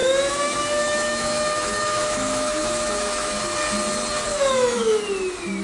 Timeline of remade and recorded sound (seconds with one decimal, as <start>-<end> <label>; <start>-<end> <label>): 0.0-3.4 remade; 3.4-4.3 recorded; 4.3-5.0 remade; 5.0-5.6 recorded